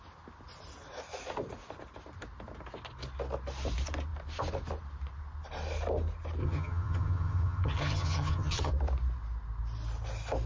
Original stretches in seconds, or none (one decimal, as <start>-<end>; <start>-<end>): 0.0-6.4; 8.7-10.5